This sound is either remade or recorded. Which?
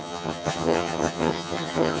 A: remade